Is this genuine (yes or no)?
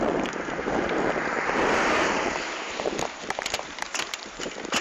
no